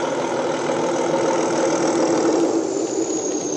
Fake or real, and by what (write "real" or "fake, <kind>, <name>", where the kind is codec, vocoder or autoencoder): real